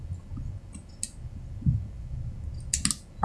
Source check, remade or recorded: recorded